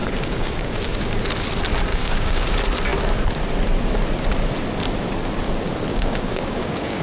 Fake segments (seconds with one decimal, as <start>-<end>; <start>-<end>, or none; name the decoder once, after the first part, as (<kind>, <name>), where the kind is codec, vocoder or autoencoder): 0.0-1.2 (codec, DAC); 1.9-2.4; 5.9-7.0